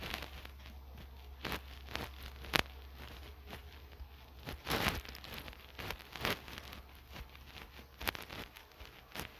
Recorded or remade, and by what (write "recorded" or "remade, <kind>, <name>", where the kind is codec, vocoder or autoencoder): recorded